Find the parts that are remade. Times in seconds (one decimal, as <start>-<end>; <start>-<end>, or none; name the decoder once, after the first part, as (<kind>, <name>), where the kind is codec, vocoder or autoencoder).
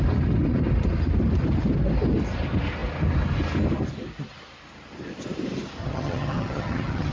5.8-7.1 (vocoder, HiFi-GAN)